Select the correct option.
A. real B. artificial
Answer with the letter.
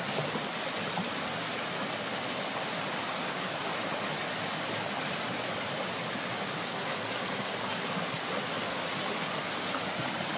A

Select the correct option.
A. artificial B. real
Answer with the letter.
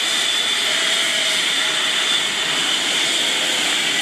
B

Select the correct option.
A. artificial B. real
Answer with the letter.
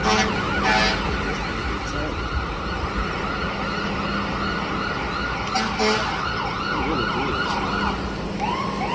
B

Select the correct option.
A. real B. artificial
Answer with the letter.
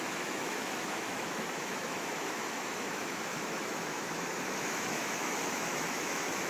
B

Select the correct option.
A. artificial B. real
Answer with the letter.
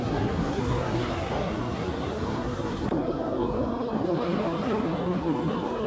A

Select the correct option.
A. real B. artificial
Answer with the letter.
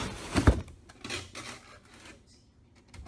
A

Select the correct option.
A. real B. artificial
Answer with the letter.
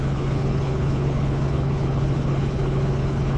B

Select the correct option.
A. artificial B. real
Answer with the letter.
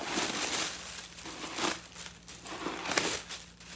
B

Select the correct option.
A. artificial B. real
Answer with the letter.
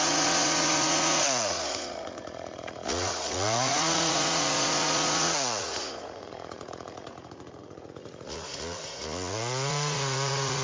A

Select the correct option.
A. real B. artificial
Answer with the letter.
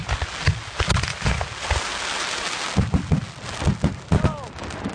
A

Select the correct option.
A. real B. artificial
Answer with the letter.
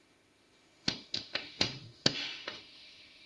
B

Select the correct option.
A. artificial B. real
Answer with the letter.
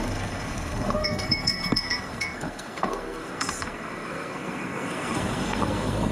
A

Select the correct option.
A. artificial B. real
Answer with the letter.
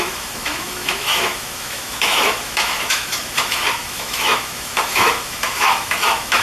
A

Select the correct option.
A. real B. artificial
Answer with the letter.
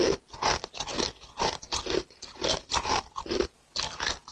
A